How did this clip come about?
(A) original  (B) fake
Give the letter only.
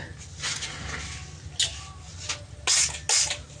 A